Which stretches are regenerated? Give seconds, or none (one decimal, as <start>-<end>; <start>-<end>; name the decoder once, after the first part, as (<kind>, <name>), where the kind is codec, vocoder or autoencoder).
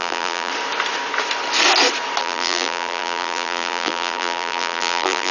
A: 0.0-0.5 (vocoder, BigVGAN v2); 2.2-5.3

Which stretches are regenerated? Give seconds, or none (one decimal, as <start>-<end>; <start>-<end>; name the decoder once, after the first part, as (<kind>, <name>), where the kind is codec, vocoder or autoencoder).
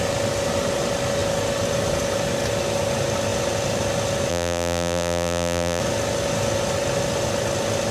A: 4.3-5.8 (vocoder, BigVGAN v2)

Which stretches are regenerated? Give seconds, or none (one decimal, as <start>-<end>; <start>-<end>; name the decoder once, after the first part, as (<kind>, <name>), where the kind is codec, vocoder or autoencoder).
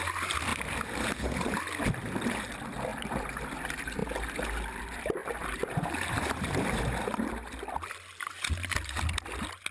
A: 0.5-1.6 (vocoder, BigVGAN v2); 2.9-3.4; 5.2-6.8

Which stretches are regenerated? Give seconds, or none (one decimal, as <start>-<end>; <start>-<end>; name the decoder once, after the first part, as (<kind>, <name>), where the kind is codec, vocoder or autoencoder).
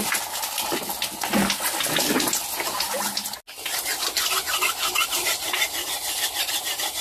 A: 3.9-5.3 (vocoder, BigVGAN v2)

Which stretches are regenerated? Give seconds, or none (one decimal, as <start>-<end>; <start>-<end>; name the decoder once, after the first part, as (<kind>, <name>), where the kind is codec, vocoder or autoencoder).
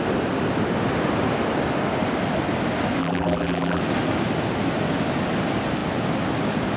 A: 3.0-3.8 (vocoder, BigVGAN v2)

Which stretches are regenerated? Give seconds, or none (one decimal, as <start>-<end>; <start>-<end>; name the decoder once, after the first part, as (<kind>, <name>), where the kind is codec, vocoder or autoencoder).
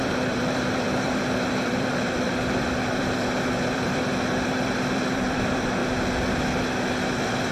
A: 0.0-5.8 (vocoder, BigVGAN v2); 7.1-7.5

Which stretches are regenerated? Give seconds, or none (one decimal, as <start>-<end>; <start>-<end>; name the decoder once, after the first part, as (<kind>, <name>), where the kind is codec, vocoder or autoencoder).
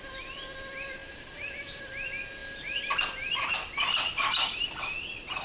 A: 2.4-5.0 (vocoder, BigVGAN v2)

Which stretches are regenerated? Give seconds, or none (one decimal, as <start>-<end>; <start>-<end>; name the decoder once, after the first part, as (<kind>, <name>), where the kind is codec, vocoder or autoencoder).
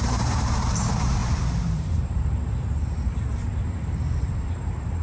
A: 0.0-5.0 (vocoder, BigVGAN v2)